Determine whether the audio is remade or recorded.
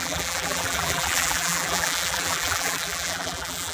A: remade